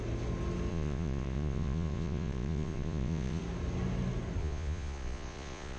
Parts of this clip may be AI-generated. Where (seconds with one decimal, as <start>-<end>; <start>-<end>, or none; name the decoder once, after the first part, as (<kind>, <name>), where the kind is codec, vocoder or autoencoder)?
0.7-3.4 (vocoder, Vocos); 4.4-5.8

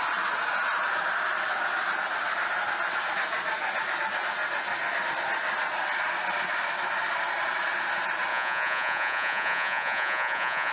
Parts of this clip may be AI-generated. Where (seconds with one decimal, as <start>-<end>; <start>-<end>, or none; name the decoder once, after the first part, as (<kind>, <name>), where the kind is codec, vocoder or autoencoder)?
8.3-10.7 (vocoder, Vocos)

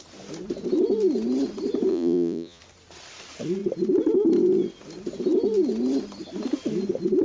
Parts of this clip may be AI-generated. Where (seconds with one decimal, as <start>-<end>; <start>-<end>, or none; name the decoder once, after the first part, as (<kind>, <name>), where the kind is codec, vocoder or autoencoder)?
1.9-2.6 (vocoder, Vocos)

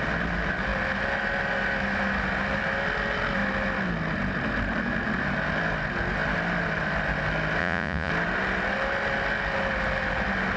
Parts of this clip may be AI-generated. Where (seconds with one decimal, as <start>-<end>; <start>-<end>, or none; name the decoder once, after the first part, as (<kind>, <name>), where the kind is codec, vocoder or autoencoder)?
7.6-8.1 (vocoder, Vocos)

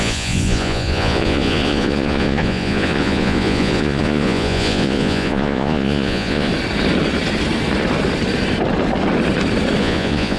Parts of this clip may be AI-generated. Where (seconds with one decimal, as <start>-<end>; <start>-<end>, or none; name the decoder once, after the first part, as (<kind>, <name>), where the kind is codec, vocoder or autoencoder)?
0.0-6.5 (vocoder, Vocos); 9.8-10.4

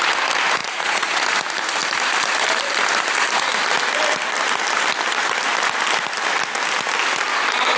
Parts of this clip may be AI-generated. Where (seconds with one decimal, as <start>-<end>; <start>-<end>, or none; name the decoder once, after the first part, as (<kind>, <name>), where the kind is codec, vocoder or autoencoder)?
0.6-1.2 (vocoder, Vocos)

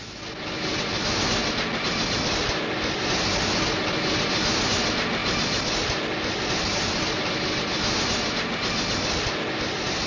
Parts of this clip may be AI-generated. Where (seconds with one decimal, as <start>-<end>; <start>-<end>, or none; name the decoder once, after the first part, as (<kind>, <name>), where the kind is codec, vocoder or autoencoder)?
none